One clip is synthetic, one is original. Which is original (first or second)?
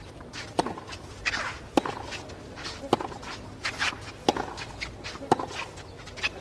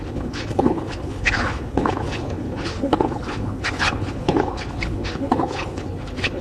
first